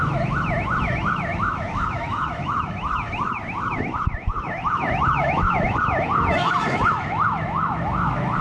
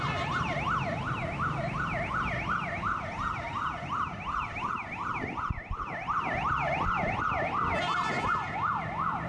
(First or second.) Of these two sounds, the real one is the second